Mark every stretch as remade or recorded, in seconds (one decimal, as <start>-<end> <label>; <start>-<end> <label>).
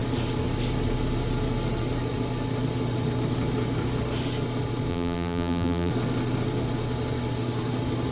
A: 0.0-4.9 recorded; 4.9-5.9 remade; 5.9-8.1 recorded